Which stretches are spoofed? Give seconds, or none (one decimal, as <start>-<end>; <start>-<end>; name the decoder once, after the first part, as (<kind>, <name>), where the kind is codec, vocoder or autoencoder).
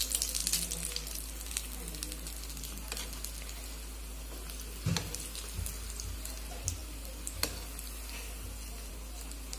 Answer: none